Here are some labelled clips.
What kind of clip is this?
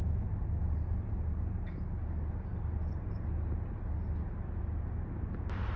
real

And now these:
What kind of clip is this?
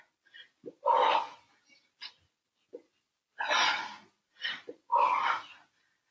real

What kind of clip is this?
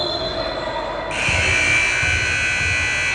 real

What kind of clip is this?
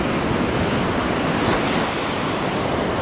real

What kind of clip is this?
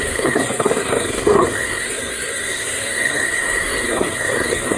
fake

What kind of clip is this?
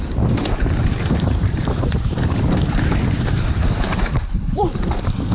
fake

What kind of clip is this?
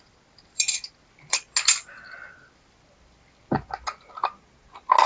real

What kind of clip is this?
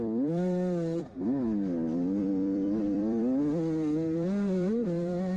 fake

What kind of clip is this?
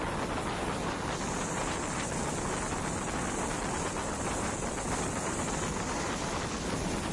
real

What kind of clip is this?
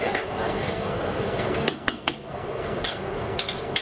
fake